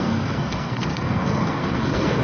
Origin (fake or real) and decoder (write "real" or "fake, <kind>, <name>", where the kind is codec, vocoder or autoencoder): fake, codec, SNAC